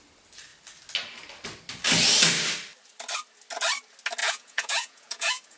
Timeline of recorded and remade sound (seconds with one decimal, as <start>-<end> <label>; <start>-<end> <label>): 0.0-4.2 recorded; 4.2-5.6 remade